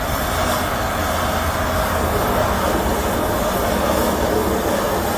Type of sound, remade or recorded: recorded